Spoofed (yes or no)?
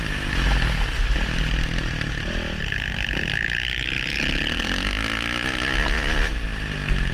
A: no